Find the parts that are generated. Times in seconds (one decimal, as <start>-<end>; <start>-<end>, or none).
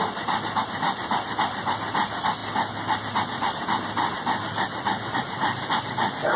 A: none